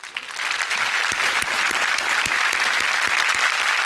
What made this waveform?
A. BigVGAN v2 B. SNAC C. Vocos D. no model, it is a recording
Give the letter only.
D